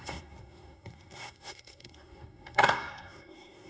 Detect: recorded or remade remade